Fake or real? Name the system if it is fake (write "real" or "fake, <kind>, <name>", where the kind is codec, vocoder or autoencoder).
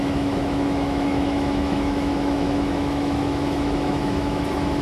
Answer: fake, autoencoder, DAC-VAE